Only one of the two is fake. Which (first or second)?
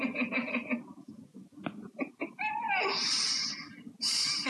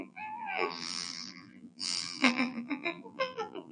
second